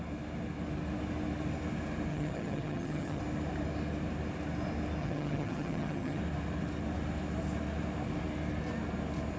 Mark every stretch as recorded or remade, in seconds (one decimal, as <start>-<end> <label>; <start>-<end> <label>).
0.0-2.1 recorded; 2.1-3.2 remade; 3.2-5.0 recorded; 5.0-6.2 remade; 6.2-9.4 recorded